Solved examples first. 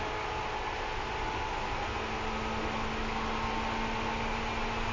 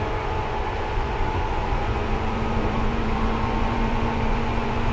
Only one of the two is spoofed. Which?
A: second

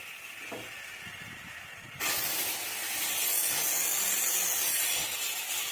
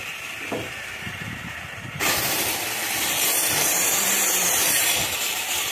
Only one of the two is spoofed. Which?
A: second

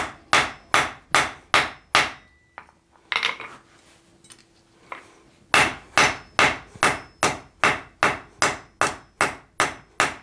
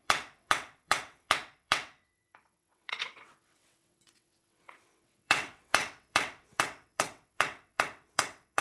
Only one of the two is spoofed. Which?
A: second